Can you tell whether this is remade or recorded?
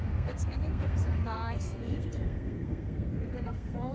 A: remade